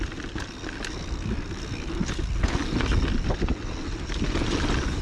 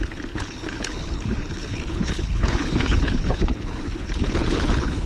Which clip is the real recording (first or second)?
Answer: first